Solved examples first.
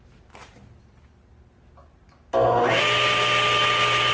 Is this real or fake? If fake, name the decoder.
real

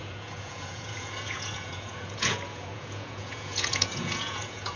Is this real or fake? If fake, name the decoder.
fake, vocoder, Vocos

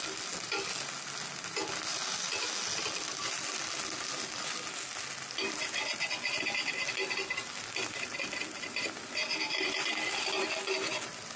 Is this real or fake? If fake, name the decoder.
real